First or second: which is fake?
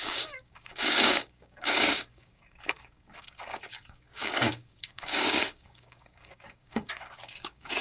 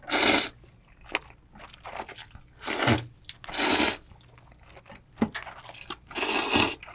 first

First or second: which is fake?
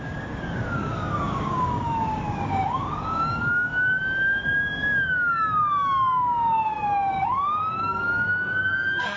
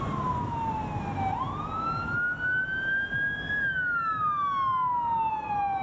first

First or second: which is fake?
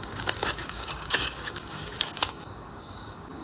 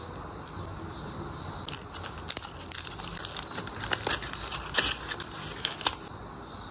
first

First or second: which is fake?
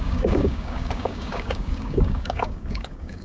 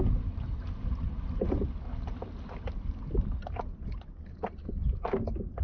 first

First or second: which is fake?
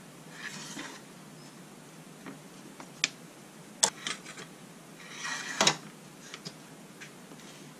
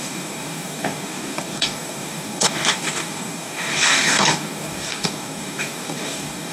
second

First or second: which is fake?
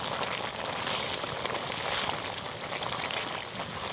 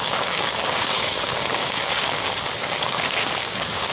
second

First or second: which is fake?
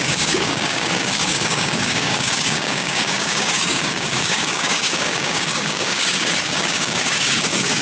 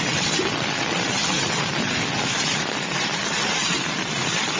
first